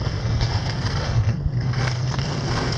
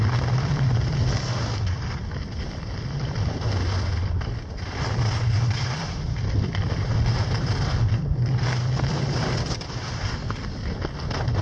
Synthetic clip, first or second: first